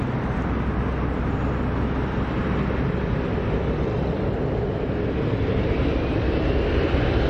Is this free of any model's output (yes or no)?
yes